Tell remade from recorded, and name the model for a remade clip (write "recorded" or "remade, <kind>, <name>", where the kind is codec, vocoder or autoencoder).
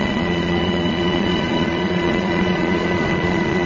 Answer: remade, vocoder, Vocos